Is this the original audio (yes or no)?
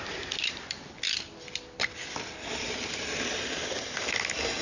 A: yes